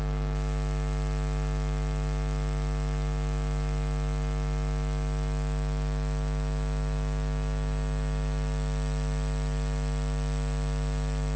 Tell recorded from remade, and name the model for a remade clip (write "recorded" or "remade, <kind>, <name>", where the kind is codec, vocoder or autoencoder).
recorded